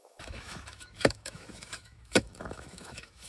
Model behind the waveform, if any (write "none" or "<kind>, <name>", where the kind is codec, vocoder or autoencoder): autoencoder, DAC-VAE